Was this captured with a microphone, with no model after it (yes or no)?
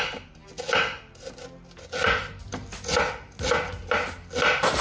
yes